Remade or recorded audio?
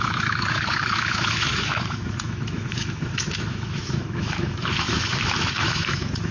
remade